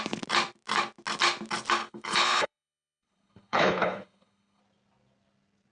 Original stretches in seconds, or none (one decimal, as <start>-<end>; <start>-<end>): 0.0-1.8; 4.6-5.7

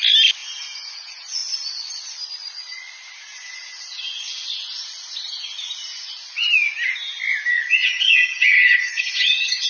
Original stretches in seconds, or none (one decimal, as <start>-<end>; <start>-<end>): 0.0-7.5

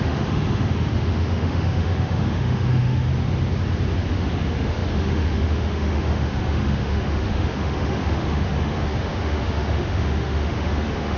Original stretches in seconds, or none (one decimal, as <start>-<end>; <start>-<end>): 3.1-4.1

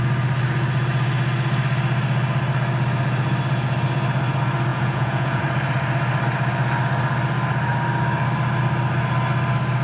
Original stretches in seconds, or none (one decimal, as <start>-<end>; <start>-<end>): 0.0-4.7; 5.4-9.8

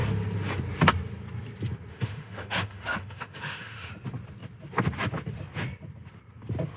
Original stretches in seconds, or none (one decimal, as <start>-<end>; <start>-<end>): 0.0-1.9; 3.9-6.8

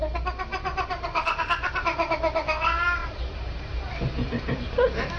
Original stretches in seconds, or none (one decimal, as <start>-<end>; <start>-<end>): 0.0-0.5; 1.7-3.0; 4.6-5.2